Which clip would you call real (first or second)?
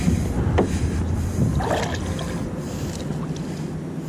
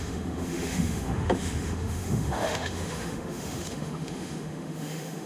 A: first